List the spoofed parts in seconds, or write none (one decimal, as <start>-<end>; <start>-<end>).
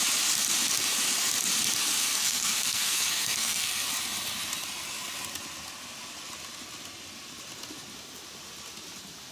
2.0-3.9